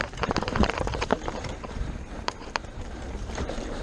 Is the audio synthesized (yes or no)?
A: yes